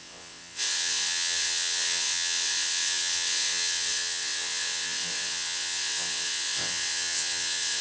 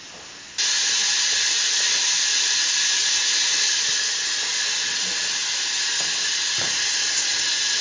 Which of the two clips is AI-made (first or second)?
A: first